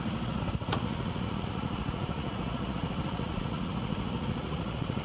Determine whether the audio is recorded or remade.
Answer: remade